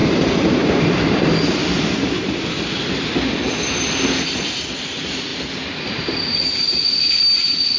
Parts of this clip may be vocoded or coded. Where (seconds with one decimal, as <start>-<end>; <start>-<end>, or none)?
0.0-0.8